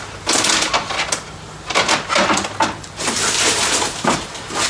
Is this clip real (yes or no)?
yes